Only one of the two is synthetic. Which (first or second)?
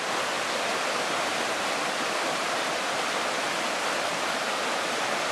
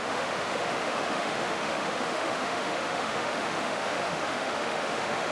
second